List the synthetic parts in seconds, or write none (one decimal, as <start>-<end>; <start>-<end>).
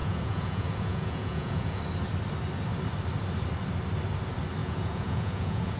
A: 0.0-1.8; 4.6-5.8